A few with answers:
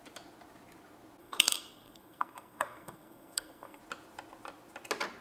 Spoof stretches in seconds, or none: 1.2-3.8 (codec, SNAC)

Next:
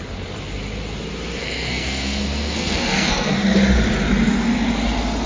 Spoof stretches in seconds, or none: 1.4-3.3 (codec, SNAC)

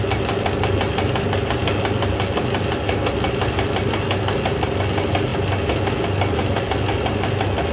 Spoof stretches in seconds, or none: none

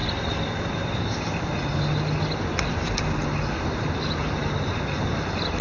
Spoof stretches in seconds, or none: none